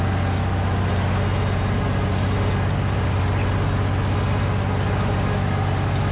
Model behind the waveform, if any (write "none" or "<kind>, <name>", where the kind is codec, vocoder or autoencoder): none